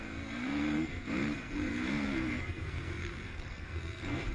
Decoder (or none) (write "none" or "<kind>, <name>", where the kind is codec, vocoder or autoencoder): codec, SNAC